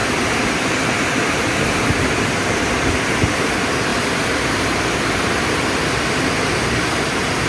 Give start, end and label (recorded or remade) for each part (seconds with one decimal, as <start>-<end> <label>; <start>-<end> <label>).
0.0-3.5 remade; 3.5-3.9 recorded; 3.9-5.4 remade; 5.4-7.5 recorded